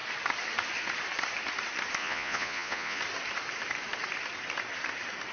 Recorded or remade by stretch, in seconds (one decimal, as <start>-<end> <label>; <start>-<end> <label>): 0.0-2.0 recorded; 2.0-3.0 remade; 3.0-5.3 recorded